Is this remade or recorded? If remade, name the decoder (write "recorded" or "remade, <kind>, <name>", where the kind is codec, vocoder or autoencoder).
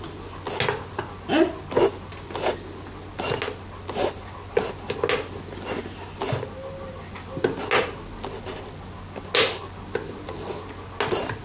recorded